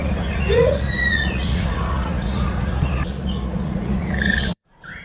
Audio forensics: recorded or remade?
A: remade